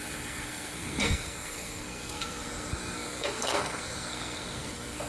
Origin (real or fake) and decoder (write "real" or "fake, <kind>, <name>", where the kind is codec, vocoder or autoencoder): fake, codec, SNAC